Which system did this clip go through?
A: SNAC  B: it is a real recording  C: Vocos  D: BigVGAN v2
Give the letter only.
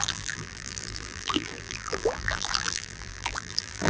D